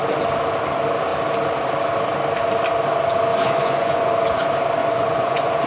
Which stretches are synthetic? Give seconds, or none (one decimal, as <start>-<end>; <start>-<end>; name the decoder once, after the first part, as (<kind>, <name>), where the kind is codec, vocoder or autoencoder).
3.3-4.1 (vocoder, Vocos); 4.8-5.7